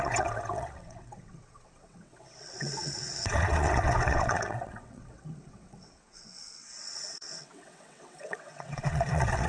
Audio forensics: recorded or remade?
remade